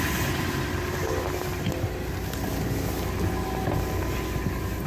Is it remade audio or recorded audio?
recorded